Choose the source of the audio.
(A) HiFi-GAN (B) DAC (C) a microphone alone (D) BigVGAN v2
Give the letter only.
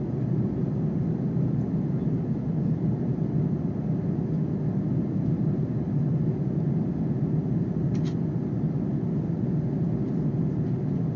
C